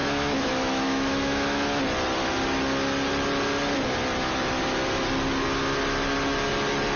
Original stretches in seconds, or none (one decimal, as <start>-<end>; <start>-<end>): 1.8-7.0

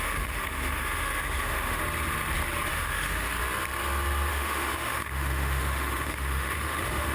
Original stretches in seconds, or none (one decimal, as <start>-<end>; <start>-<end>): 1.8-2.7; 3.3-4.3

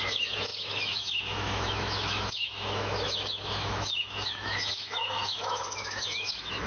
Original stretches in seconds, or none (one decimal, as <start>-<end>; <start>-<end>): none